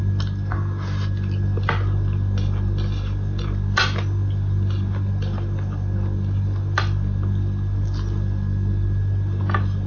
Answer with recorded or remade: recorded